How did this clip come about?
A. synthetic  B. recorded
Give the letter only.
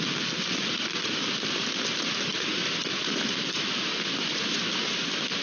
B